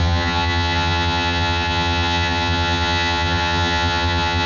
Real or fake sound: fake